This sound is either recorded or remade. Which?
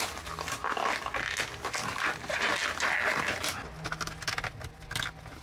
recorded